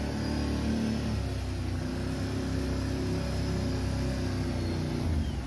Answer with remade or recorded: recorded